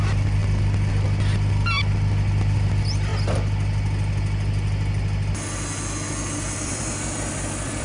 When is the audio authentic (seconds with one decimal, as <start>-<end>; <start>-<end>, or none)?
0.4-2.4; 3.1-6.5